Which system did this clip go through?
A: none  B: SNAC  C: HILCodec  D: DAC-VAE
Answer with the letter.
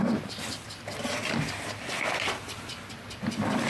A